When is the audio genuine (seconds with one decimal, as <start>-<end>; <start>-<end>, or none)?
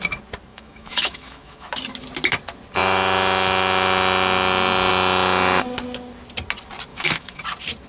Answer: 0.0-0.5; 1.7-6.9; 7.4-7.9